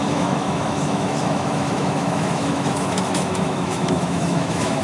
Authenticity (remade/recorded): remade